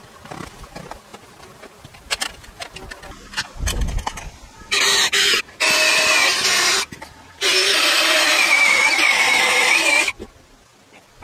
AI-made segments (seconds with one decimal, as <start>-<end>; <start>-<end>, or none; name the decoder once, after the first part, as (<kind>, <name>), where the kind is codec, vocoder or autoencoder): 8.3-9.9 (vocoder, BigVGAN v2)